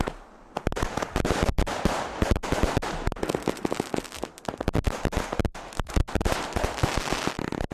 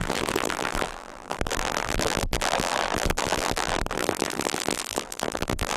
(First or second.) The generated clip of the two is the second